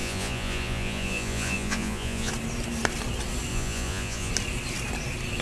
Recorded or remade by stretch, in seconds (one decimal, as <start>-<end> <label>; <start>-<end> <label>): 0.0-2.3 remade; 2.3-3.5 recorded; 3.5-4.3 remade; 4.3-5.4 recorded